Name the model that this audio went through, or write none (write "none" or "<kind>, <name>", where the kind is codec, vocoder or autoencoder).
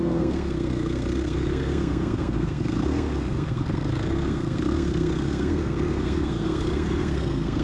codec, SNAC